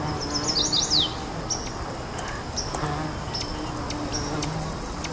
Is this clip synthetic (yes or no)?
no